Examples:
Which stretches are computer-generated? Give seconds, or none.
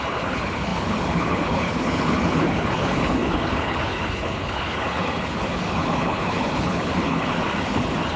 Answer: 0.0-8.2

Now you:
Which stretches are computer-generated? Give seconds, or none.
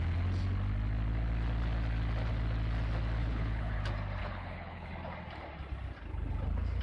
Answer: 3.2-3.8; 4.2-4.9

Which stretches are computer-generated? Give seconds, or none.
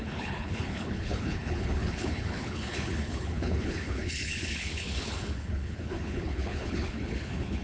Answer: 0.0-7.6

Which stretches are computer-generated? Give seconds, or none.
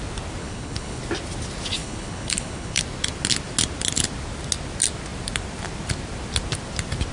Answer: 0.4-1.0; 1.8-2.8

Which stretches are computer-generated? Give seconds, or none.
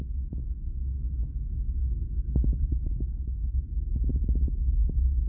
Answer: 2.5-3.6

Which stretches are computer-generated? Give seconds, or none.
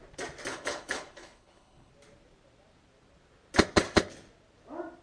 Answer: 0.5-1.9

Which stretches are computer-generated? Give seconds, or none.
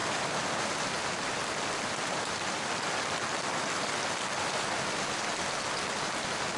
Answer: none